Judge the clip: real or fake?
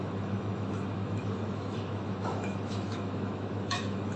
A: fake